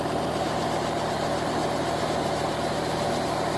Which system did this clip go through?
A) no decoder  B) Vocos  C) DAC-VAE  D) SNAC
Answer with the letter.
A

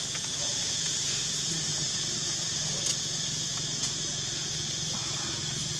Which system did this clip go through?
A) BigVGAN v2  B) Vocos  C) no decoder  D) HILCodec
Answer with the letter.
B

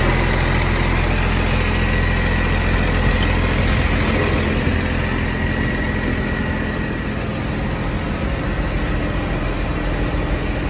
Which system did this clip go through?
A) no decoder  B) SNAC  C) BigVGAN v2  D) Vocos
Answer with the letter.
A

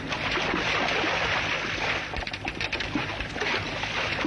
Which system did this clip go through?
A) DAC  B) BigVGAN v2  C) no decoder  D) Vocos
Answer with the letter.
C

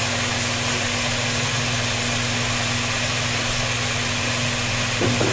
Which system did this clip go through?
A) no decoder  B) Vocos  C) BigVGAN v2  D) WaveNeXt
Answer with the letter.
A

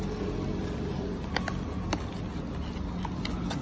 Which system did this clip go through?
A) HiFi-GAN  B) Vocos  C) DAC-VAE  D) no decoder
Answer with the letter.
D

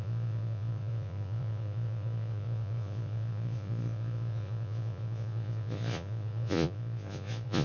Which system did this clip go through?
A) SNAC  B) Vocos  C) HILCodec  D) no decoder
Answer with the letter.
B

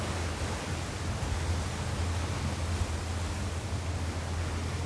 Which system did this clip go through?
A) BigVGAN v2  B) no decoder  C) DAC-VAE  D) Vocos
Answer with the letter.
B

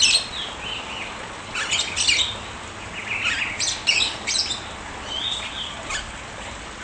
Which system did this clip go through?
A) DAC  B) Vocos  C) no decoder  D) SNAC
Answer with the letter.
C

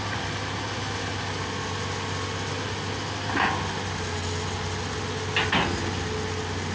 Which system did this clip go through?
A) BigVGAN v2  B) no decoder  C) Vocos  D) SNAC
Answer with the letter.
B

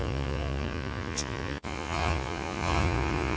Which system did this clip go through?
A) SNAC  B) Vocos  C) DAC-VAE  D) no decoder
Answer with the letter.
B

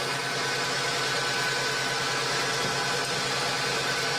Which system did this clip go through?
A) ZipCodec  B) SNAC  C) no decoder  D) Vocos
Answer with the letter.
C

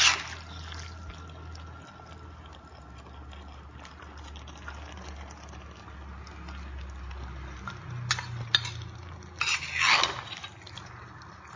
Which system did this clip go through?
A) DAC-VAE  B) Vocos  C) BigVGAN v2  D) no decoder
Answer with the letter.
D